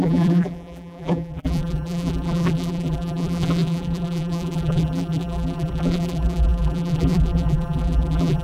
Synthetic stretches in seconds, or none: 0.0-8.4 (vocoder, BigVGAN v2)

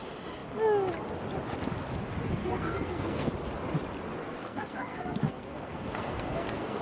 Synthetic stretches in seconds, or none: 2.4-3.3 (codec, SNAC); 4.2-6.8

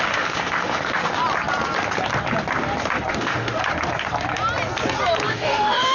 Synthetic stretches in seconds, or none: 0.0-1.2 (autoencoder, DAC-VAE); 3.1-3.6; 5.3-5.9